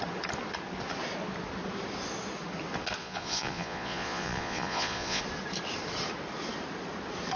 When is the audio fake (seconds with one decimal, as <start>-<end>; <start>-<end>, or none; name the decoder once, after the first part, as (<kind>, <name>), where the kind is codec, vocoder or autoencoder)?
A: 3.0-5.2 (vocoder, Vocos)